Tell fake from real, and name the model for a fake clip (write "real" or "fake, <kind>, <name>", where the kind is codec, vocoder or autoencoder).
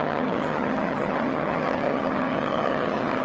fake, vocoder, HiFi-GAN